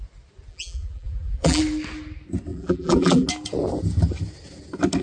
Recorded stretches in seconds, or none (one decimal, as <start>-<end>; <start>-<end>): 0.0-0.5; 1.6-2.5; 3.3-5.0